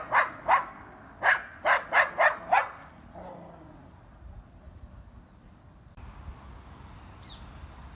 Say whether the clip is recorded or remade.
recorded